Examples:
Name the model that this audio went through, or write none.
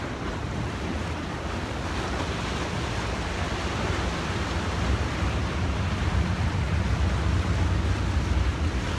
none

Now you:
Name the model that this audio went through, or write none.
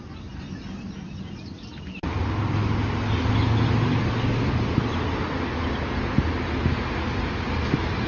none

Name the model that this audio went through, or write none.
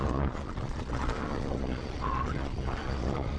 vocoder, Vocos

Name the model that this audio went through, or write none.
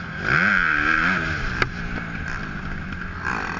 none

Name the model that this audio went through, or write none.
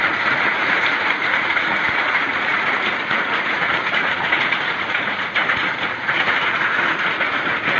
vocoder, Vocos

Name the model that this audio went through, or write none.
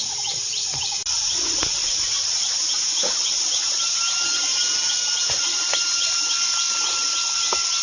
none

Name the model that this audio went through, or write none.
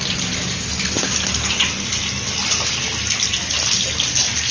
none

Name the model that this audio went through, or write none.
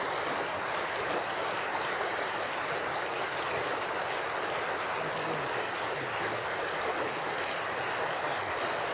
none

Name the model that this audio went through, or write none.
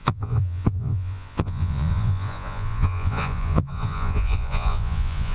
vocoder, Vocos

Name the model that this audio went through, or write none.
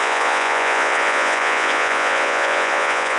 vocoder, Vocos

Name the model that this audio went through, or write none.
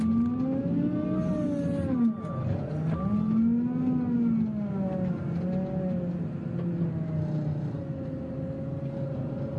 none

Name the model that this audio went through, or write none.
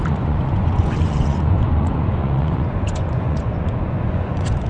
vocoder, Vocos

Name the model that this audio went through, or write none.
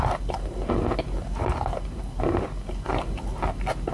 none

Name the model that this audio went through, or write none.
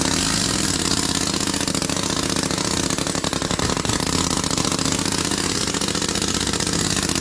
none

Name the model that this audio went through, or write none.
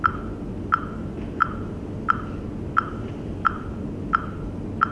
none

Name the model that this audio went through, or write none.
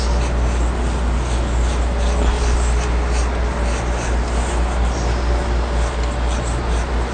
none